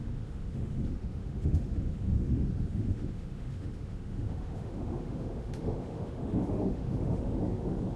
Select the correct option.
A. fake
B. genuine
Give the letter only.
A